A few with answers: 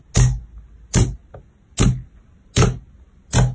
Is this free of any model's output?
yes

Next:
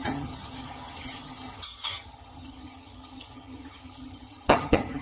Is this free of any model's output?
no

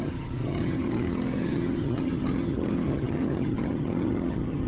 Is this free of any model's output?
no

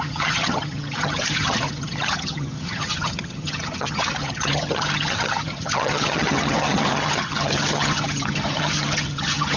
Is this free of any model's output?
no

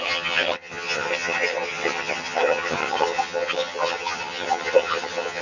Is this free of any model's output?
no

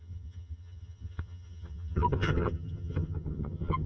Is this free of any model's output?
no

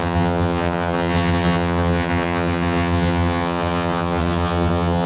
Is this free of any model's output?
no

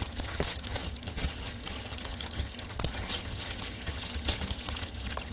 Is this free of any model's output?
no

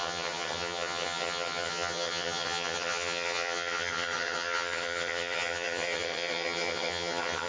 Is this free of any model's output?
no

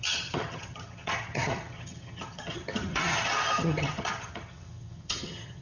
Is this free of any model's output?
no